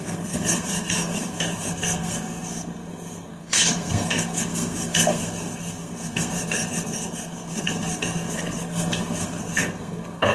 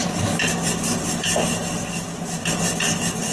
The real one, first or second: second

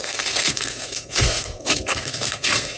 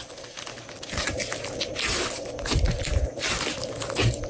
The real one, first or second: second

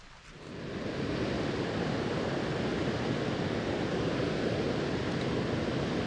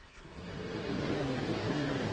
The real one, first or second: first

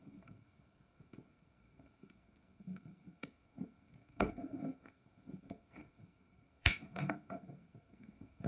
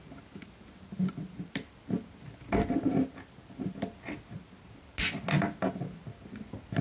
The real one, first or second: second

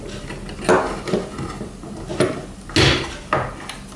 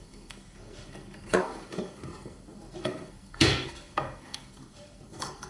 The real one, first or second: first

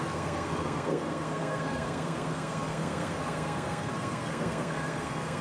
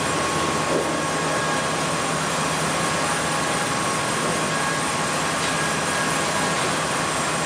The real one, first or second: second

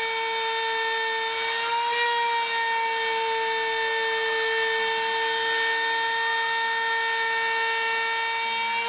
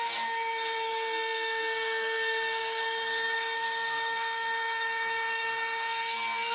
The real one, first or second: first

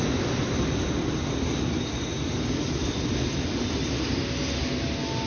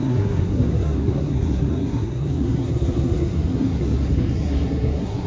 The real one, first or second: first